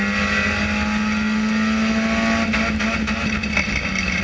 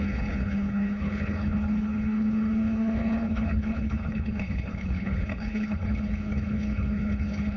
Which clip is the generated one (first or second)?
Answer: second